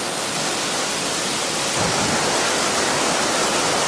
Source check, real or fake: real